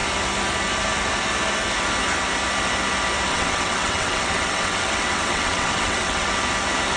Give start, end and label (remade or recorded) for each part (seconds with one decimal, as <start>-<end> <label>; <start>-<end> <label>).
0.0-3.3 recorded; 3.3-6.3 remade; 6.3-7.0 recorded